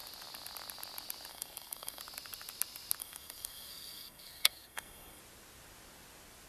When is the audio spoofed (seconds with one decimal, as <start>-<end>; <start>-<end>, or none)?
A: 1.3-2.0; 3.0-5.2